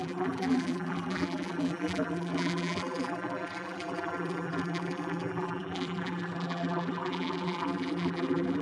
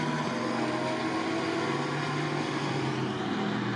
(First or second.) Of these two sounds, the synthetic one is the first